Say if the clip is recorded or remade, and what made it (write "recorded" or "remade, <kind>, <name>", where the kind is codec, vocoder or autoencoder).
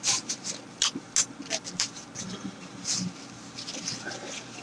recorded